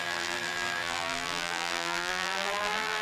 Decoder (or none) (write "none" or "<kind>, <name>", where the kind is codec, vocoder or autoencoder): vocoder, BigVGAN v2